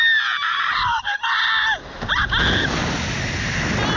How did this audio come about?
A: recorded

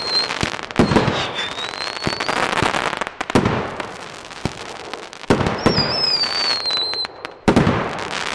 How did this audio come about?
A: recorded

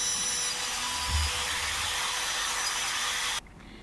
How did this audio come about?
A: recorded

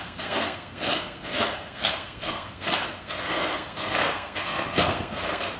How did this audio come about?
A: remade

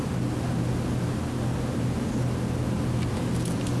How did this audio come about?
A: recorded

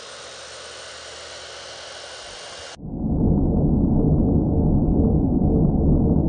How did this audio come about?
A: recorded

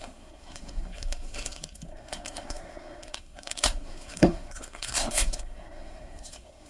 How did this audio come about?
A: remade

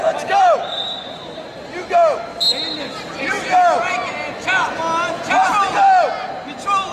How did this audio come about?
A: recorded